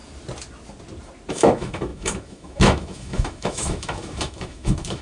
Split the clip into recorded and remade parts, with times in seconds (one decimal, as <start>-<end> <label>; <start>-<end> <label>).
0.0-1.3 recorded; 1.3-5.0 remade